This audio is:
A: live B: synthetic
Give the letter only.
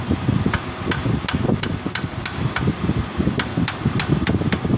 A